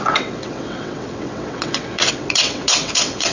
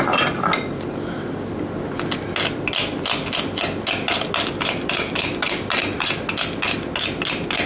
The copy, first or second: first